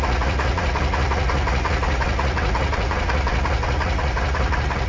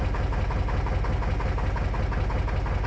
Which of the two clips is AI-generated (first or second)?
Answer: first